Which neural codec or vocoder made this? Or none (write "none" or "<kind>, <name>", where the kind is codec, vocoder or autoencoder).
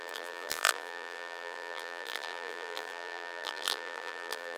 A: vocoder, BigVGAN v2